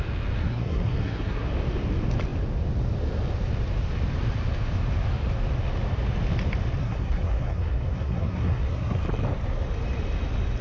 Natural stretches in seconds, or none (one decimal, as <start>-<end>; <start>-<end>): 0.0-0.4; 1.5-6.8; 9.0-10.6